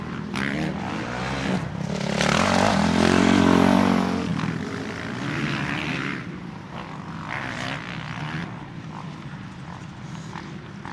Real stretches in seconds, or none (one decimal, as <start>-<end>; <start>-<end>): 0.0-10.9